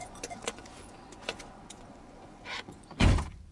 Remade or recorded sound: remade